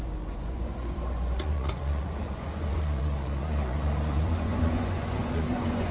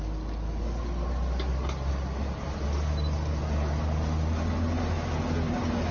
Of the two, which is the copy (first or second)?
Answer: first